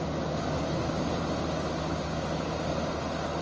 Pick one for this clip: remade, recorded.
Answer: recorded